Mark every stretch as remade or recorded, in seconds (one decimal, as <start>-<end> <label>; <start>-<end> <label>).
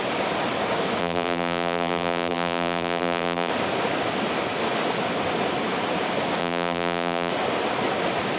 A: 0.0-1.0 recorded; 1.0-3.5 remade; 3.5-6.4 recorded; 6.4-7.3 remade; 7.3-8.4 recorded